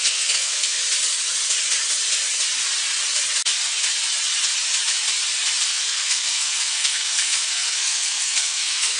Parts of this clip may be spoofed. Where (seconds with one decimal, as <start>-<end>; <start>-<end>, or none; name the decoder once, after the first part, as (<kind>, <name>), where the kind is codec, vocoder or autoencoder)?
0.0-0.8 (codec, SNAC); 5.7-9.0